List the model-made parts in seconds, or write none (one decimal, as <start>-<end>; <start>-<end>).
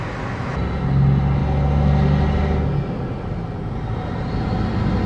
none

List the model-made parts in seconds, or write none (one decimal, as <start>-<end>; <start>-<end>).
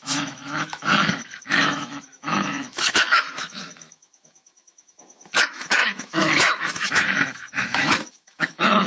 0.0-8.9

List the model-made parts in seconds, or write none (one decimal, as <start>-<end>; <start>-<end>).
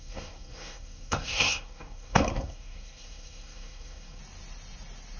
0.0-4.2